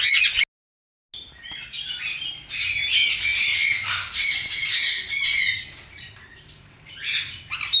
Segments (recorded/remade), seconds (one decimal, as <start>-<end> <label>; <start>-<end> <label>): 0.0-3.3 recorded; 3.3-7.8 remade